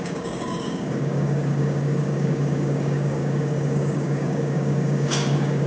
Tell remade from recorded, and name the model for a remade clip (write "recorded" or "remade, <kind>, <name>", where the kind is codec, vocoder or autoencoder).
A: remade, codec, DAC